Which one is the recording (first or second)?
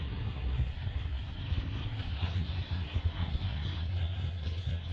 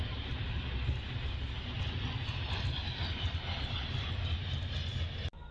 second